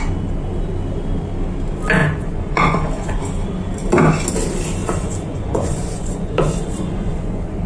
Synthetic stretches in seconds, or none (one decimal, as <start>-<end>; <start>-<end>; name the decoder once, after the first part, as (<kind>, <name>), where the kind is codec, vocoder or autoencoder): 2.0-3.2 (vocoder, Vocos); 4.8-7.7